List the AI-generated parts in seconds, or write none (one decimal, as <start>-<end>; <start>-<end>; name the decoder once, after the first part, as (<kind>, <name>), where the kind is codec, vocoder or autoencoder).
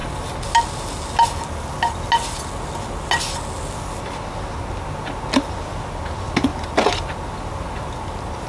none